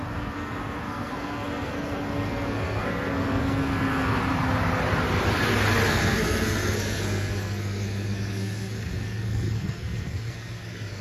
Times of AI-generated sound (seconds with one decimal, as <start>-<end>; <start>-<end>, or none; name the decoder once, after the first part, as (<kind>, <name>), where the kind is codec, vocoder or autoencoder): 0.0-4.2 (codec, SNAC); 5.9-11.0